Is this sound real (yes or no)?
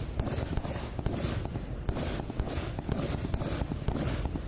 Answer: yes